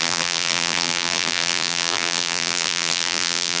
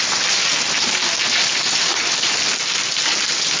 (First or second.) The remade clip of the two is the first